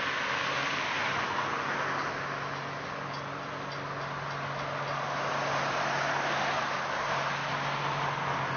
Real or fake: real